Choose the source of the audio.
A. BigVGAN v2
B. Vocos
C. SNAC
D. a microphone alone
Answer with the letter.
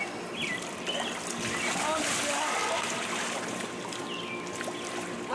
D